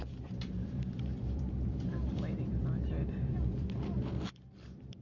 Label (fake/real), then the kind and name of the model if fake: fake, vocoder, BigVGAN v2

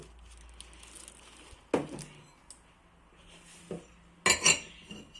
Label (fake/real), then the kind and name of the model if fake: real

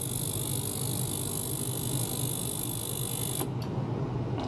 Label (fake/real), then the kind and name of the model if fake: real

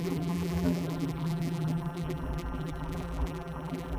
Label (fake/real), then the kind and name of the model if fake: fake, vocoder, BigVGAN v2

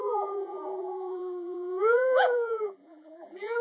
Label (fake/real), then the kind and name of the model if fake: fake, vocoder, BigVGAN v2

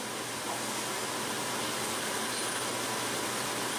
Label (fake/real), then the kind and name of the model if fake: real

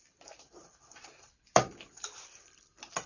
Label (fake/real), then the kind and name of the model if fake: fake, vocoder, BigVGAN v2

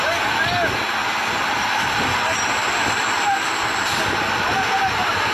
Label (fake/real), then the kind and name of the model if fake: real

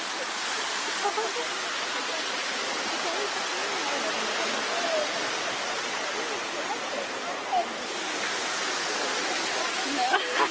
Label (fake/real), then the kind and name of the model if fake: real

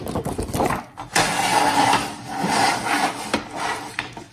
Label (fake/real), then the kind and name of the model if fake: real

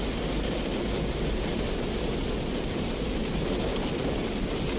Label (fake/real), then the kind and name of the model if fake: real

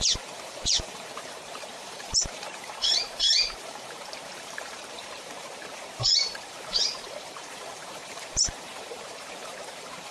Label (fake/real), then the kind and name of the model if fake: fake, vocoder, BigVGAN v2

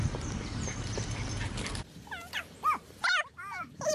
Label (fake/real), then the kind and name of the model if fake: fake, vocoder, BigVGAN v2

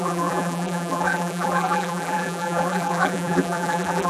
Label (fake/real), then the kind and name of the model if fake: fake, vocoder, BigVGAN v2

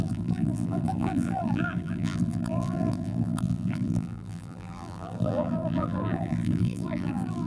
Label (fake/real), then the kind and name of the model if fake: fake, vocoder, BigVGAN v2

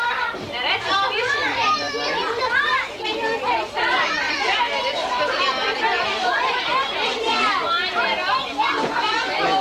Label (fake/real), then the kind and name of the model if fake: fake, vocoder, BigVGAN v2